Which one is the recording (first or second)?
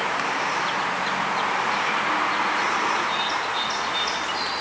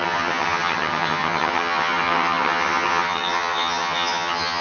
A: first